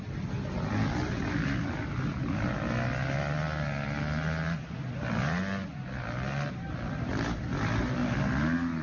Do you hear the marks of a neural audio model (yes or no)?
no